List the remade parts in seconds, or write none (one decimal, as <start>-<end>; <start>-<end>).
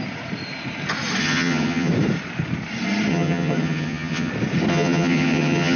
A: 1.2-1.9; 3.1-4.3; 4.7-5.8